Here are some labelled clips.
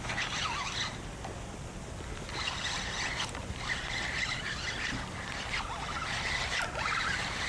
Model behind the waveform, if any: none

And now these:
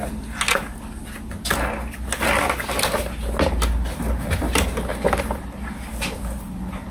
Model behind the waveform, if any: none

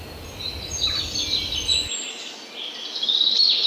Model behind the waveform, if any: none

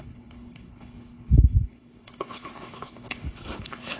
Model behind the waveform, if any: codec, HILCodec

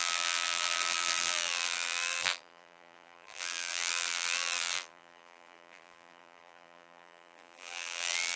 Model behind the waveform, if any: vocoder, BigVGAN v2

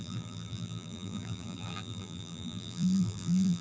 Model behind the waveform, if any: vocoder, BigVGAN v2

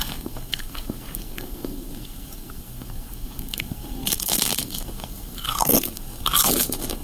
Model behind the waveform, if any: codec, SNAC